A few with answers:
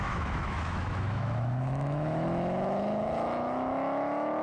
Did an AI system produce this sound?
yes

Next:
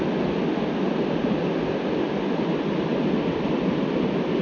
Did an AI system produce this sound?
no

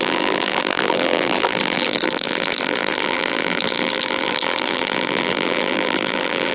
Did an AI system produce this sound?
yes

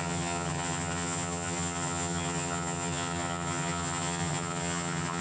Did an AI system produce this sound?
yes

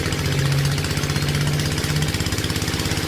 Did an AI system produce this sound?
no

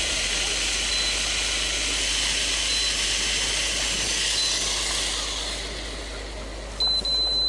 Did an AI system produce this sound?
no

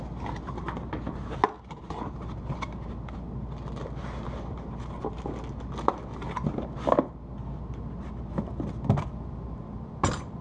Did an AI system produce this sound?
no